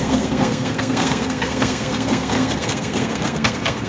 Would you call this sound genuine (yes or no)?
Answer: no